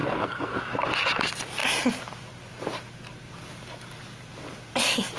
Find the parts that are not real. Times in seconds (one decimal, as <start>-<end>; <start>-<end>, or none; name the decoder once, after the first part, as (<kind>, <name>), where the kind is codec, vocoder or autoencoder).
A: 0.0-0.6 (codec, SNAC)